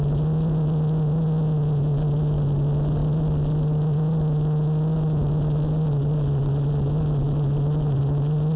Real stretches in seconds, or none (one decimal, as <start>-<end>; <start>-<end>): 0.0-8.6